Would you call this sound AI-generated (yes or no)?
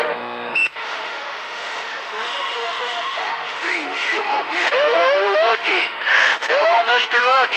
yes